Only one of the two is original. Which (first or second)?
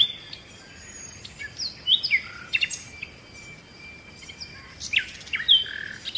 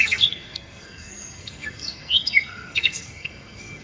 first